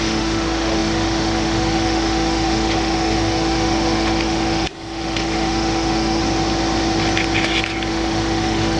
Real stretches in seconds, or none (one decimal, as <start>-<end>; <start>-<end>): 6.2-7.9

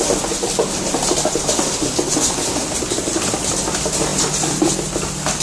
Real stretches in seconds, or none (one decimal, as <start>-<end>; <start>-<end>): 0.0-5.4

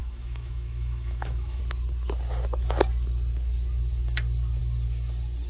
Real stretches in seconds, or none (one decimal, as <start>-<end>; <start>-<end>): 1.6-5.5

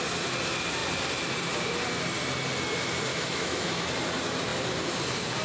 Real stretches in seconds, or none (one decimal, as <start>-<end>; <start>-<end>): 0.0-3.1; 3.9-5.4

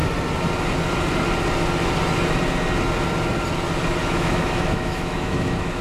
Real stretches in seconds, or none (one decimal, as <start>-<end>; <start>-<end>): 0.0-4.0

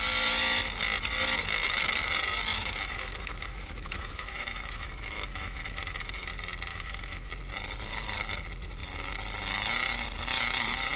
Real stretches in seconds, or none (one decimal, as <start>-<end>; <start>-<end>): 0.0-2.5; 6.3-6.7; 7.3-11.0

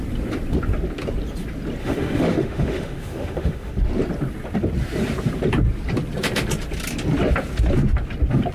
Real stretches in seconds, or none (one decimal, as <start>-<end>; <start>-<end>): 0.0-1.8; 3.7-8.5